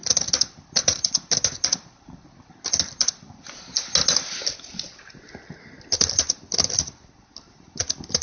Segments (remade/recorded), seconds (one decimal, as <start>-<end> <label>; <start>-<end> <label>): 0.0-8.2 recorded